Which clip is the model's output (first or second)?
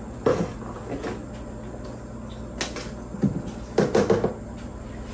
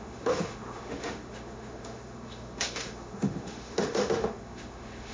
second